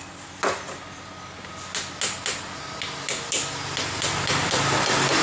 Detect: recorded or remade recorded